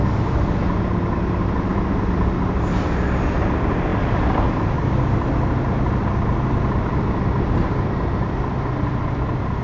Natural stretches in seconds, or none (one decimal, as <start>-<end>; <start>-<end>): 0.0-9.6